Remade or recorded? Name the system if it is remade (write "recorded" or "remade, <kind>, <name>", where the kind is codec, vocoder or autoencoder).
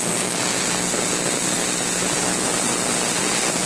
recorded